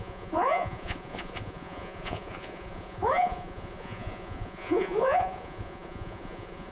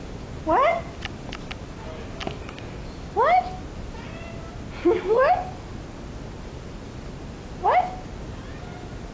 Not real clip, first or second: first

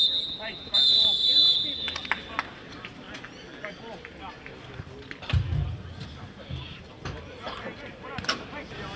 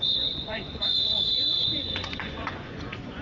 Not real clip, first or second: second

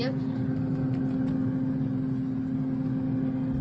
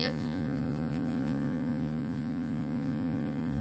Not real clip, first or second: second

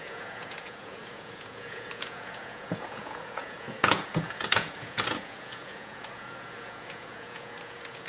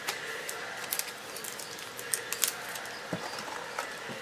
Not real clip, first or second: first